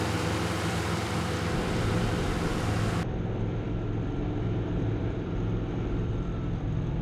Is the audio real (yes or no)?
no